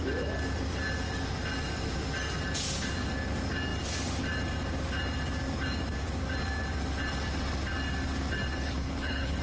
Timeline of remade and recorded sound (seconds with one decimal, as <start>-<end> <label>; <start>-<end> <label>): 0.0-8.5 recorded; 8.5-9.4 remade